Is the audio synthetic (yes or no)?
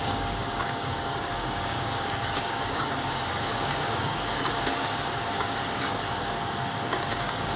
yes